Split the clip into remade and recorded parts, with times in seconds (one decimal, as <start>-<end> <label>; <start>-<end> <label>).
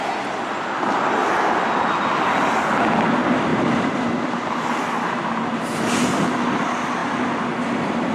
0.0-8.1 recorded